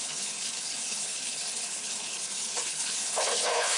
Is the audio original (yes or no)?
no